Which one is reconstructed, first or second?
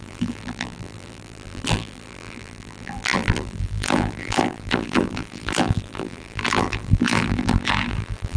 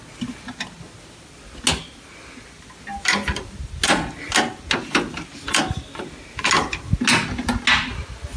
first